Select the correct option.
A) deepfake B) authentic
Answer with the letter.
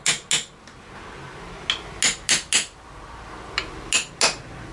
B